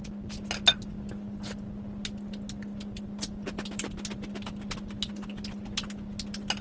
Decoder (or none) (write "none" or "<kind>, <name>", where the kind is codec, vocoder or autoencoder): none